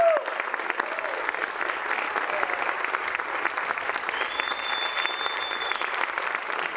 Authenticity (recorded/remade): recorded